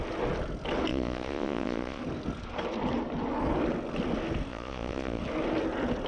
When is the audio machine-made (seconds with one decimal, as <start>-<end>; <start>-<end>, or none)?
0.9-2.0; 4.5-5.2